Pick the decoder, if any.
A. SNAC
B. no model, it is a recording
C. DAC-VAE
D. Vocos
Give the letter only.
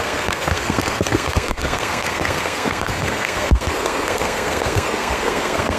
A